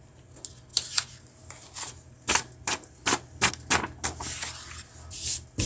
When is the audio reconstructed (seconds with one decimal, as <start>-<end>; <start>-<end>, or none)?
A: none